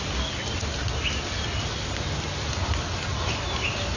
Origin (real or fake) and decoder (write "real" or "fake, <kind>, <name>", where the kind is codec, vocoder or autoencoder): real